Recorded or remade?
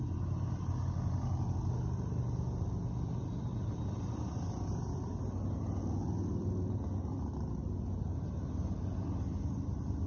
recorded